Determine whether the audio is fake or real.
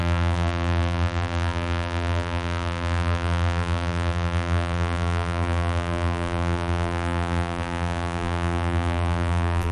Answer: fake